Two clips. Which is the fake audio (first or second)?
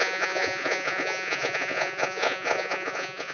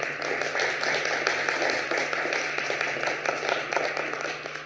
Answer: first